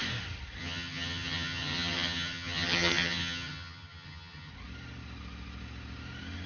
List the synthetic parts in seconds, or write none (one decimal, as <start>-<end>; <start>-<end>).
0.6-4.5